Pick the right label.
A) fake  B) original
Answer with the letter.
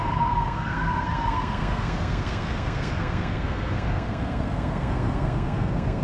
A